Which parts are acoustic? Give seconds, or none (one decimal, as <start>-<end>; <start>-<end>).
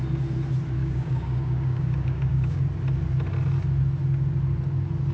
0.0-0.8; 2.6-5.1